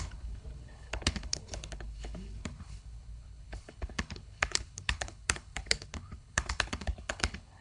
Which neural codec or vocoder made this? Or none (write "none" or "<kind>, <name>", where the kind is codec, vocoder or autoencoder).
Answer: codec, HILCodec